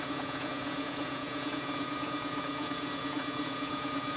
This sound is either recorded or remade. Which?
remade